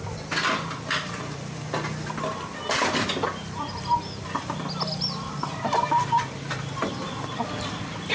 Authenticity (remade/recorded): remade